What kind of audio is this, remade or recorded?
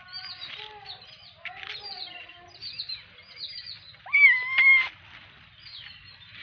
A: recorded